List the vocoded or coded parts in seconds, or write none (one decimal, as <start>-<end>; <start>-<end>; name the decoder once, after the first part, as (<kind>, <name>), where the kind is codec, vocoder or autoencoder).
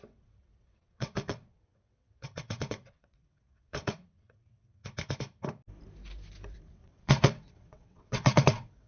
0.0-4.8 (vocoder, WaveNeXt); 6.7-8.9